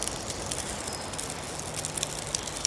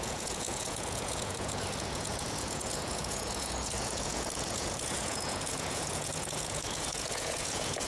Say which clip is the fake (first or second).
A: second